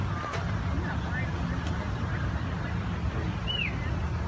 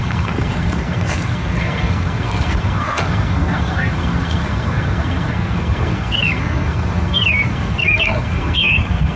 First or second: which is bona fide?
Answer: first